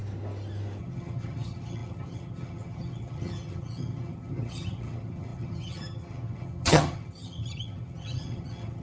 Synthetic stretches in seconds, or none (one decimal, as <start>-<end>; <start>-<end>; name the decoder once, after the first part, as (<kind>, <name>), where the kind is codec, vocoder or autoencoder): 0.8-8.8 (vocoder, HiFi-GAN)